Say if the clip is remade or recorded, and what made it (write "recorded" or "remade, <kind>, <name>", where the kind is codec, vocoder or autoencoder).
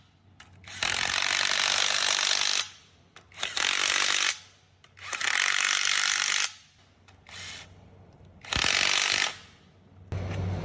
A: recorded